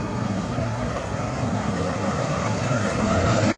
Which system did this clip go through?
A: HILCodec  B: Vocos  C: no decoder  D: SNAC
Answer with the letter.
D